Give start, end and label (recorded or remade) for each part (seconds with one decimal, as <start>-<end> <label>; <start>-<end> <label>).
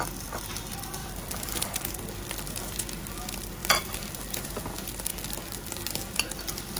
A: 0.0-1.0 recorded; 1.0-2.6 remade; 2.6-3.6 recorded; 3.6-4.4 remade; 4.4-6.8 recorded